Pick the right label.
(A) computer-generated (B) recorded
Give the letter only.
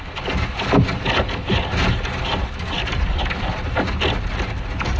B